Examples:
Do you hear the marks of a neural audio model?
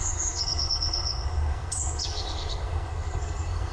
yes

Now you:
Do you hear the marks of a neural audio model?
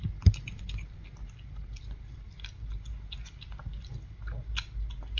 no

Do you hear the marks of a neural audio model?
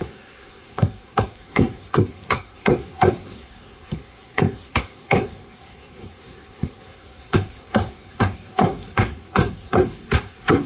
yes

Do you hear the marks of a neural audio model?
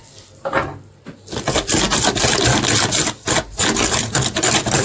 no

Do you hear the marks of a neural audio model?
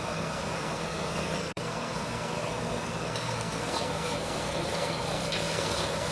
yes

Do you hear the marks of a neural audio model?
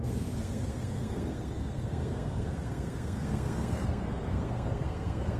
yes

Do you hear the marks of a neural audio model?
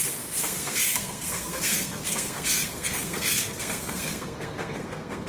yes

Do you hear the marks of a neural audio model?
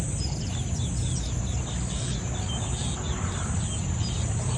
no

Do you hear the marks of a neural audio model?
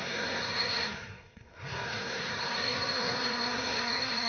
yes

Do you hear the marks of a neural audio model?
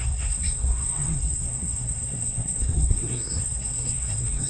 yes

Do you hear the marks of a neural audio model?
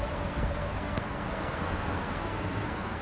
yes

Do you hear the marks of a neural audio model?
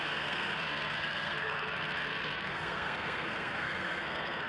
yes